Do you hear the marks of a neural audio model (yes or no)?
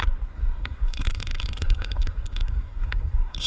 yes